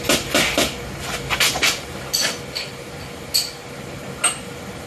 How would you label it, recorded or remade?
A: recorded